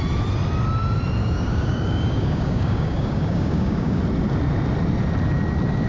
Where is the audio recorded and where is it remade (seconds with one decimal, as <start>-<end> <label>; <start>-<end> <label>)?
0.0-1.2 recorded; 1.2-4.0 remade; 4.0-5.9 recorded